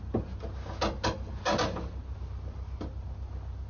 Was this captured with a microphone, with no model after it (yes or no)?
yes